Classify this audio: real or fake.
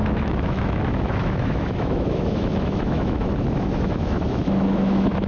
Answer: fake